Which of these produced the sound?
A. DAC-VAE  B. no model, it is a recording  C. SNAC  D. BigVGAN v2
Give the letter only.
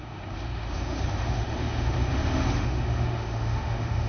A